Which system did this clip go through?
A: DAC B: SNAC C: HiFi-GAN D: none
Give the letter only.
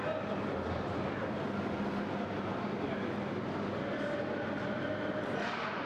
D